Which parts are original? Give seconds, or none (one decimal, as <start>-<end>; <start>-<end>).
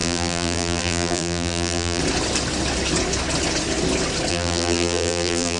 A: 2.0-4.3